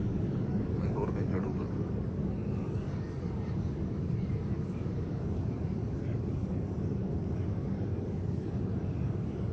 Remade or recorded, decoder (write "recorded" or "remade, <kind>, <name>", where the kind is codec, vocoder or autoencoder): remade, codec, DAC